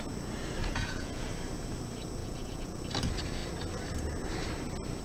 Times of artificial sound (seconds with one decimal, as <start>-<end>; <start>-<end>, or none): 0.6-1.3; 2.2-2.8